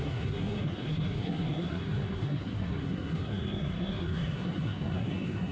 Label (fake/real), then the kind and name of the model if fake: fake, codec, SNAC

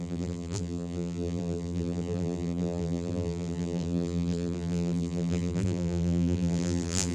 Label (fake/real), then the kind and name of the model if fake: fake, vocoder, BigVGAN v2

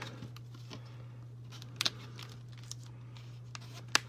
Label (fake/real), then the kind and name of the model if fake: real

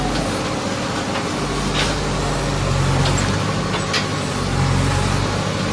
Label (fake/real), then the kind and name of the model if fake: real